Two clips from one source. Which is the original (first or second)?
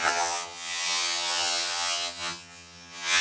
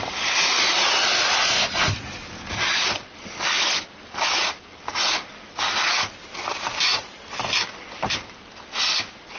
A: second